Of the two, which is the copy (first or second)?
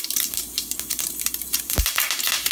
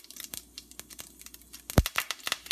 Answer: first